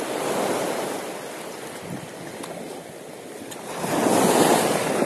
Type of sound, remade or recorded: recorded